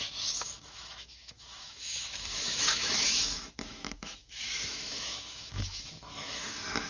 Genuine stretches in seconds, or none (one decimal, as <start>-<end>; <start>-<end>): none